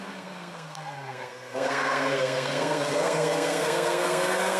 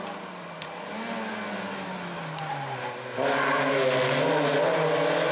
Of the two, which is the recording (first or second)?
second